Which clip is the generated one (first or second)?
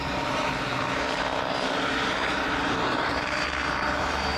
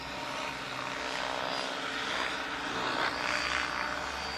first